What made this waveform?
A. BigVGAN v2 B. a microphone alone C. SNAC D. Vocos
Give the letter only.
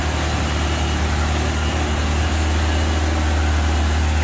B